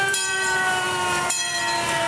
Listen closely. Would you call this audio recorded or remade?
remade